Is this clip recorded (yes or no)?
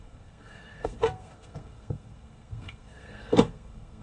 no